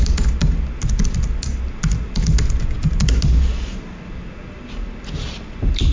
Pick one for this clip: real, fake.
real